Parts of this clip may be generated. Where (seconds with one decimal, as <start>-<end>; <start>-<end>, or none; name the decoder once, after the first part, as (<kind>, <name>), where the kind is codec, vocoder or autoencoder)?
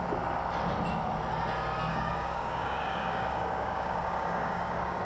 1.9-5.0 (codec, DAC)